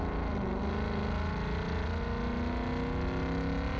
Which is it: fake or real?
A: real